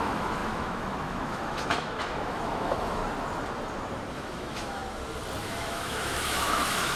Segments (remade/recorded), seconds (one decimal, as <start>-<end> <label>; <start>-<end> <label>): 0.0-3.0 remade; 3.0-4.1 recorded; 4.1-4.8 remade; 4.8-5.4 recorded; 5.4-7.0 remade